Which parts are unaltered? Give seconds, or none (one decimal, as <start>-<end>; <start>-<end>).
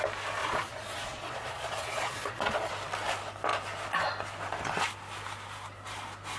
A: 0.0-0.4; 2.7-6.4